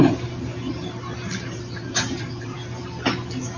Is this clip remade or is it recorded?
remade